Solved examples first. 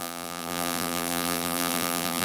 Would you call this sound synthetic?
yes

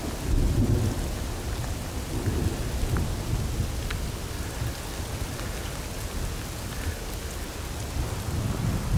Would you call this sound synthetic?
no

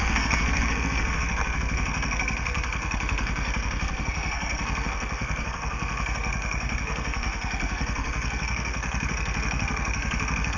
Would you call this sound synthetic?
yes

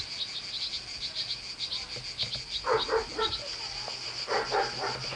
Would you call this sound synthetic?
no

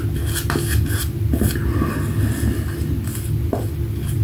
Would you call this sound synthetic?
no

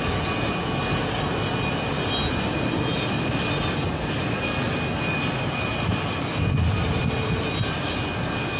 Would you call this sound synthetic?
no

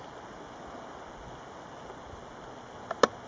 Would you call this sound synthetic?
no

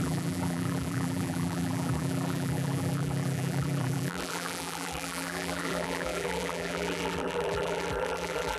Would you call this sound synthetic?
yes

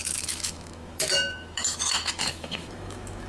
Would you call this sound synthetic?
yes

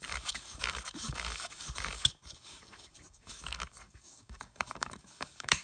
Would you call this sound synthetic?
yes